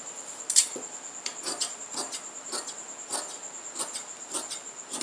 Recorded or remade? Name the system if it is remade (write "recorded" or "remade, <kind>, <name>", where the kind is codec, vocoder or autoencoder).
recorded